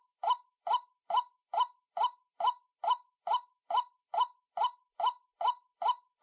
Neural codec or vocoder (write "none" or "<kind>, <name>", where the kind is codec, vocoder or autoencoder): none